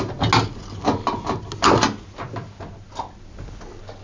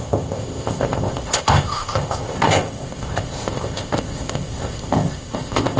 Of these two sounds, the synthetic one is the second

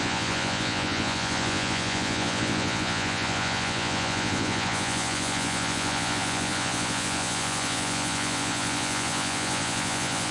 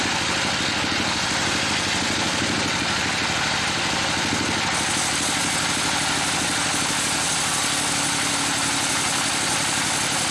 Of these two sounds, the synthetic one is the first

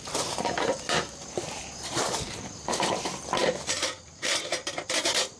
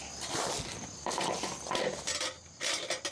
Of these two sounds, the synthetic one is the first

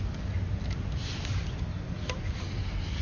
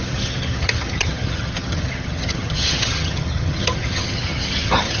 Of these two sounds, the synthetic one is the second